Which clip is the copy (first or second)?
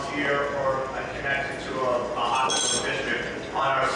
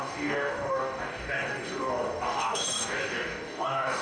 second